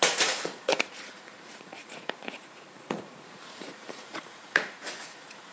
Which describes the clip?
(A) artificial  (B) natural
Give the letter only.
A